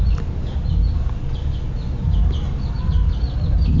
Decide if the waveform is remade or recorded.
recorded